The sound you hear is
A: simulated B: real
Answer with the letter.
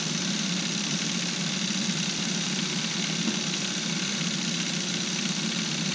B